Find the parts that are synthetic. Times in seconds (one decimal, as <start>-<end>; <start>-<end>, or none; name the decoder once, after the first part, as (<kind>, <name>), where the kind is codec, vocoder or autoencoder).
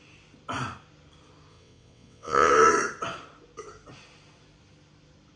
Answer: 1.5-2.5 (vocoder, WaveNeXt)